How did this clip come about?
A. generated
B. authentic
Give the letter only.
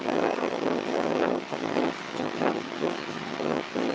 A